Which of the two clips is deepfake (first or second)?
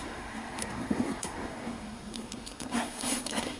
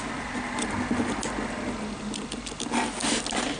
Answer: first